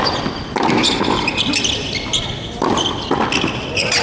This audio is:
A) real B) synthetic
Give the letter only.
A